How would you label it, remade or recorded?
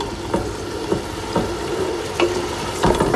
recorded